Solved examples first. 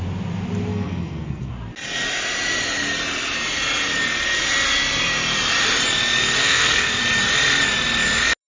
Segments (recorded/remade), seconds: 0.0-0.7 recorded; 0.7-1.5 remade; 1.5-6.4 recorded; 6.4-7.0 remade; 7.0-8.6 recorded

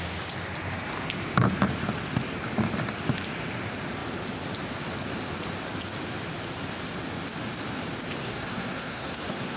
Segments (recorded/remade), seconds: 0.0-8.2 recorded; 8.2-9.6 remade

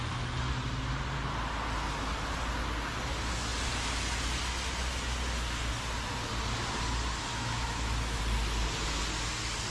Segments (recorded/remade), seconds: 0.0-7.3 recorded; 7.3-8.2 remade; 8.2-9.7 recorded

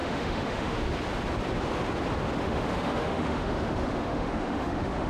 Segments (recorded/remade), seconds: 0.0-0.8 remade; 0.8-2.3 recorded; 2.3-5.1 remade